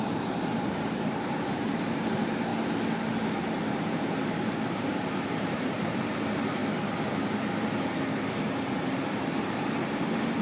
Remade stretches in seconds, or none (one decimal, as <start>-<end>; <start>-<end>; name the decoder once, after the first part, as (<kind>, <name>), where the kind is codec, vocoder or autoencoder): 0.0-2.5 (vocoder, BigVGAN v2); 3.7-6.6; 8.1-10.4